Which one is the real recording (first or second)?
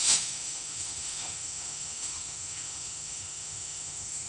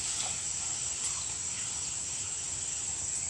second